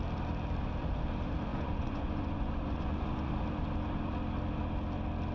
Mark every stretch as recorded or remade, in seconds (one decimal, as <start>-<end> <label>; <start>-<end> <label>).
0.0-1.5 recorded; 1.5-3.3 remade; 3.3-5.3 recorded